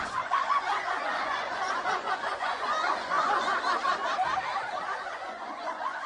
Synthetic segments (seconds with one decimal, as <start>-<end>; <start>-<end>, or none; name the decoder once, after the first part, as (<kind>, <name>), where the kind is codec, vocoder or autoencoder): 0.0-3.5 (vocoder, Vocos); 4.8-6.1